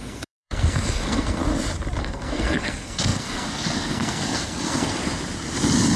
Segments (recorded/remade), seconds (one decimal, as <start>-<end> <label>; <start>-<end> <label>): 0.0-1.4 remade; 1.4-2.0 recorded; 2.0-5.0 remade; 5.0-6.0 recorded